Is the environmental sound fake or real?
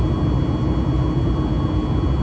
real